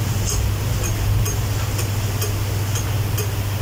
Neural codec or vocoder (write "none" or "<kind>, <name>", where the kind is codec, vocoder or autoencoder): none